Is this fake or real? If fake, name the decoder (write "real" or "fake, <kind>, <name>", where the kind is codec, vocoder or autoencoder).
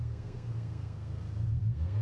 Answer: fake, codec, SNAC